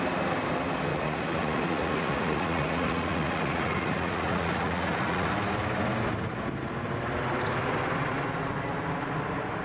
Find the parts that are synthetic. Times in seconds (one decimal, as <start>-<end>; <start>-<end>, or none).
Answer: 0.9-5.3